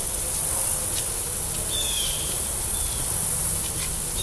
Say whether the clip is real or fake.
real